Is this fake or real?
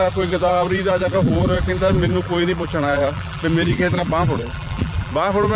fake